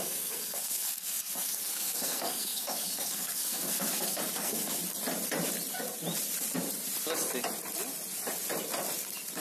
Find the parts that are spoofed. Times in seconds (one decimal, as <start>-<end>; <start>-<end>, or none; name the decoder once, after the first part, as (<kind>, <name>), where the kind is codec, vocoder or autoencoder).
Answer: 0.0-4.8 (codec, SNAC)